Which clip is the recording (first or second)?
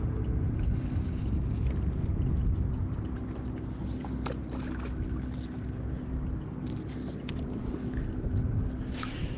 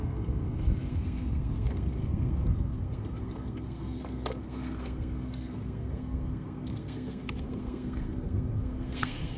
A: first